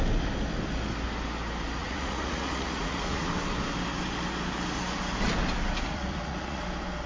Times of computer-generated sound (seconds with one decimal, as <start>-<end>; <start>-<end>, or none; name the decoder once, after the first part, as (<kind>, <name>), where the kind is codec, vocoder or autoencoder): 1.8-3.3 (vocoder, Vocos); 5.9-6.6